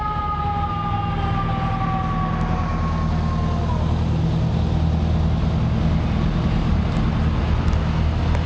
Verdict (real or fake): real